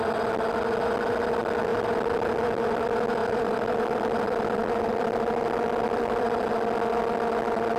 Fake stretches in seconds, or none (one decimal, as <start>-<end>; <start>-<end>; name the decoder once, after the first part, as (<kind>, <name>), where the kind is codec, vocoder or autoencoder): 1.7-2.3 (vocoder, BigVGAN v2); 3.2-6.5